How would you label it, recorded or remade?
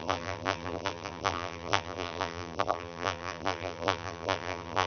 remade